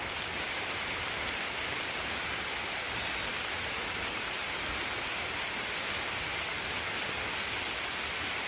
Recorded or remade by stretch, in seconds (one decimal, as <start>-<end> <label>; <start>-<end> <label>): 0.0-8.5 recorded